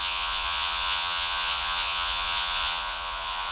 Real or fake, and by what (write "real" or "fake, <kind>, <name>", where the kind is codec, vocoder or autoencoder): fake, vocoder, Vocos